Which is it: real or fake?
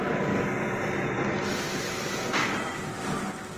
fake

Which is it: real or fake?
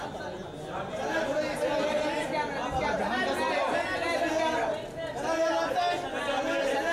real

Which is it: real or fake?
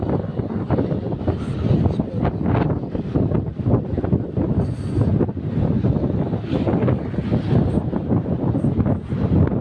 real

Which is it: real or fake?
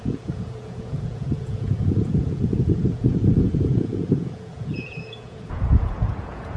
fake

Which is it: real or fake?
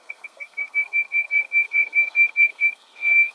fake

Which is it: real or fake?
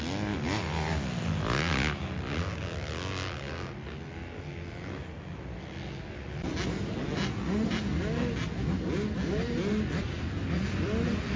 real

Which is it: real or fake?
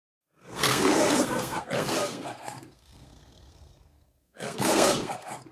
fake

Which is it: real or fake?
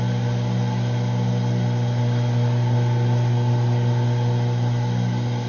real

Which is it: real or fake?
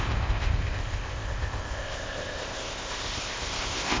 fake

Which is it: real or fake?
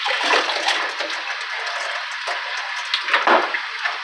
real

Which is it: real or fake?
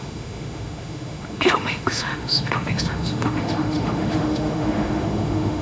fake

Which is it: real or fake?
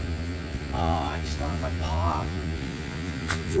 fake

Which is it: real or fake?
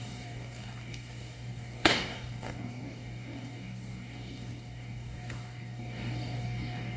fake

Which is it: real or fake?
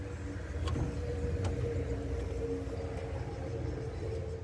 real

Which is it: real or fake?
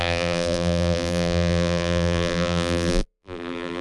fake